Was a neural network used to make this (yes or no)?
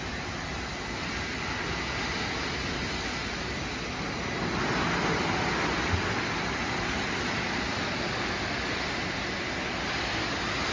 no